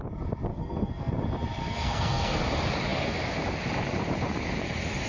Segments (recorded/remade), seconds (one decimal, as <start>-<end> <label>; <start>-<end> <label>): 0.0-0.5 recorded; 0.5-1.1 remade; 1.1-1.6 recorded; 1.6-2.4 remade; 2.4-5.1 recorded